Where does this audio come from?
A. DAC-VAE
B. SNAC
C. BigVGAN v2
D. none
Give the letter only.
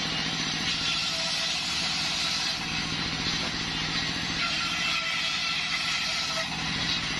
C